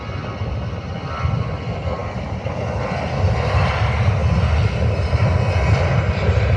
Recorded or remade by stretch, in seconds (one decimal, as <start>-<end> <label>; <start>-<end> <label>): 0.0-6.6 recorded